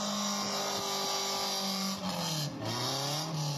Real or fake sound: real